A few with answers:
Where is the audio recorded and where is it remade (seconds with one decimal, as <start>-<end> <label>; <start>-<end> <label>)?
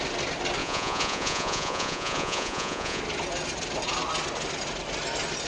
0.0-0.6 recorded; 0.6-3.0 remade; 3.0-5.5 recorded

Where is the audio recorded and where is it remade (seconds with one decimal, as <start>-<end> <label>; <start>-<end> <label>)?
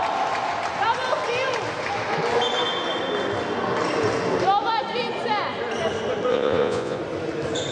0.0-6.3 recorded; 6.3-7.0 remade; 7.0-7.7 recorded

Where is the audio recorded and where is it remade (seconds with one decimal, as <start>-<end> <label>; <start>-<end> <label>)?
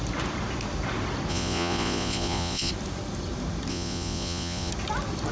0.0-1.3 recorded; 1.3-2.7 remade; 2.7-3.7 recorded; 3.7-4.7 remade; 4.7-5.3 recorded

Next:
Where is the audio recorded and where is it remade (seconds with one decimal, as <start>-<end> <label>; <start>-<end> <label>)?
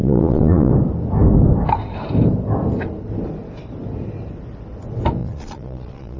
0.0-0.7 remade; 0.7-5.2 recorded; 5.2-6.2 remade